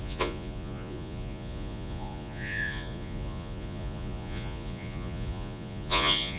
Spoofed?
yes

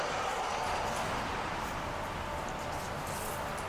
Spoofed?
no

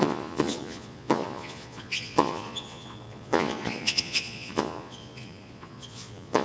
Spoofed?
yes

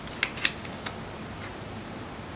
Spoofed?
no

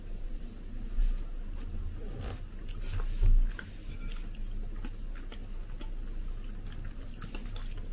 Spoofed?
no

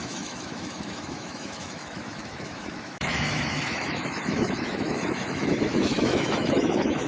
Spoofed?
yes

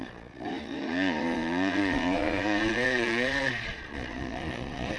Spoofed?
yes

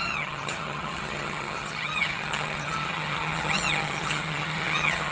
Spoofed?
yes